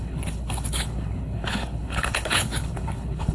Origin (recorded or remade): remade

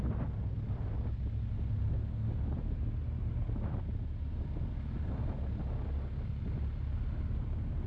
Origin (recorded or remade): recorded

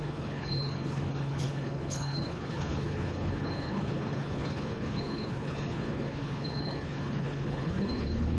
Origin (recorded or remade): remade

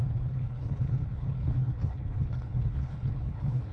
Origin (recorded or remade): remade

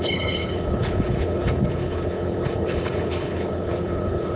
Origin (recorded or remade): remade